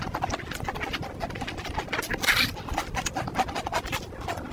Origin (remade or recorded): recorded